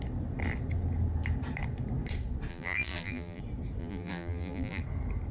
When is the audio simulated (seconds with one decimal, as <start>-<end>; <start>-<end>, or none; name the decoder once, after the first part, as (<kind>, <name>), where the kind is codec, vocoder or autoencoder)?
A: 2.5-3.4 (vocoder, BigVGAN v2); 3.8-4.8